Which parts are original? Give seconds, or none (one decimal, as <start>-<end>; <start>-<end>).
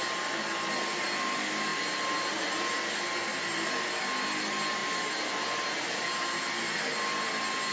0.0-7.7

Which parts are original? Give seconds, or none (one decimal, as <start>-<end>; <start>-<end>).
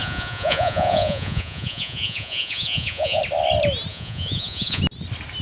3.2-3.9; 4.8-5.4